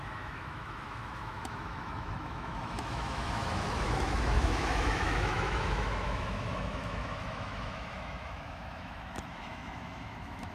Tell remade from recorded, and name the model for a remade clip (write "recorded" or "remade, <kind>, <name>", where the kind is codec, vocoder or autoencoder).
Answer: remade, autoencoder, DAC-VAE